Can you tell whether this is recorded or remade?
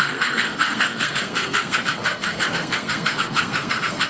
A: remade